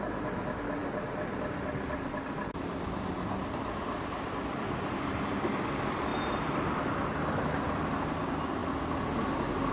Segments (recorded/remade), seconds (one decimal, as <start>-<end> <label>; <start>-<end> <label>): 0.0-6.1 recorded; 6.1-7.4 remade; 7.4-9.7 recorded